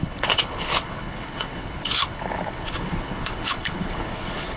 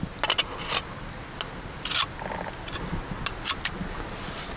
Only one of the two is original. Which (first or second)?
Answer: second